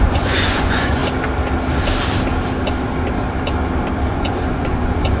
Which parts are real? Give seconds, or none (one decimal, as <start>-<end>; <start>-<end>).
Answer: 1.0-4.1